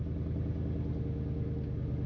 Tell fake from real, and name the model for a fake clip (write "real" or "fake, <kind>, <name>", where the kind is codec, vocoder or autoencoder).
real